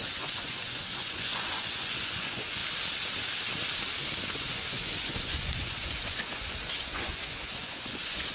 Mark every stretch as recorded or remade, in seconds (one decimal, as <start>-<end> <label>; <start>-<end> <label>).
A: 0.0-2.6 remade; 2.6-4.3 recorded; 4.3-8.3 remade